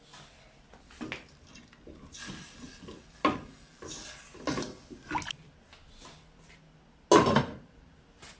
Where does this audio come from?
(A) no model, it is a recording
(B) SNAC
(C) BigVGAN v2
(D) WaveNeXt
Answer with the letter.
A